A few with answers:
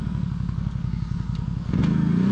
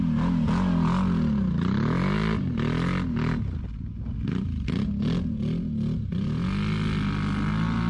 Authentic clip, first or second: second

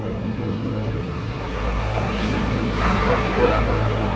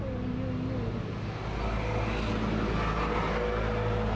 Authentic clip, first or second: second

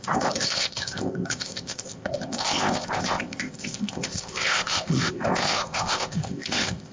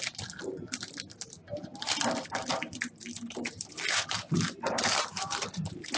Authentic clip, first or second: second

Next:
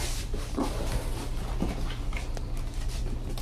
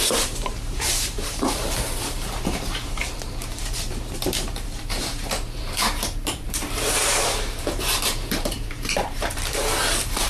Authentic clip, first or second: first